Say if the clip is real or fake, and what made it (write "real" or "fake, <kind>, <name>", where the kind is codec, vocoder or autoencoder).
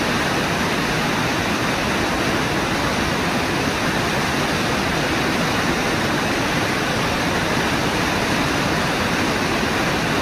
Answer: real